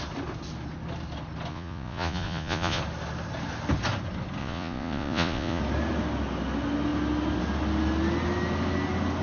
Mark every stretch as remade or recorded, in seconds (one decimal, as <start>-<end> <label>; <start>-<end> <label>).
0.0-1.5 recorded; 1.5-2.8 remade; 2.8-4.4 recorded; 4.4-5.6 remade; 5.6-9.2 recorded